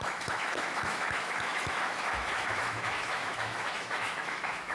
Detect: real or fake fake